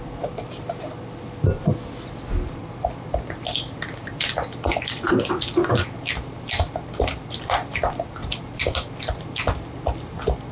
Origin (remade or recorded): recorded